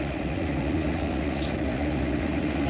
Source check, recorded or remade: remade